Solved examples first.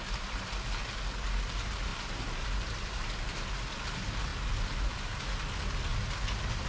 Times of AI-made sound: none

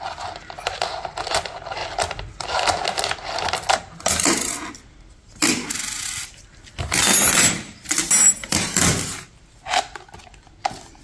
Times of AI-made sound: 1.8-2.6; 8.2-10.0

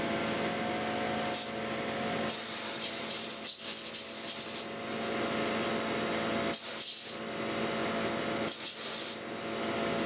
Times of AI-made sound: none

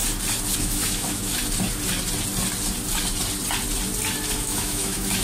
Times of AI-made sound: 0.6-1.3; 4.4-5.2

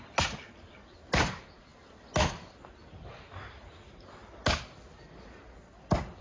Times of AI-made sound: none

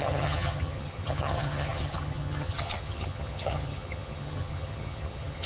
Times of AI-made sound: 0.0-5.5

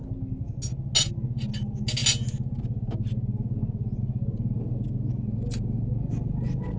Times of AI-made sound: none